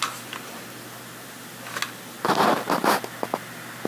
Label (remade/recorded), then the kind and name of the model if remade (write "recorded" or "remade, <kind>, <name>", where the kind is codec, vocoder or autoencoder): recorded